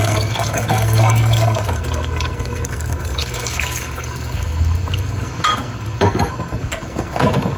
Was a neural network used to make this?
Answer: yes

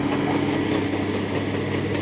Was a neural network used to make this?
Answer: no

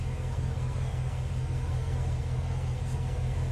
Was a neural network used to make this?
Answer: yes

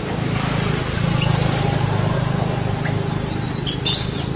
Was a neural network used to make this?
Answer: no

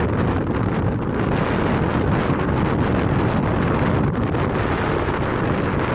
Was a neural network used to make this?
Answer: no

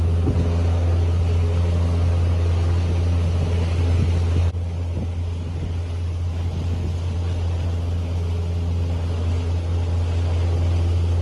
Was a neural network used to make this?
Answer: no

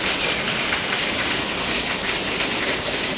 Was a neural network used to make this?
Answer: no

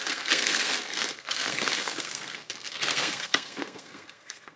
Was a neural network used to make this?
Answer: yes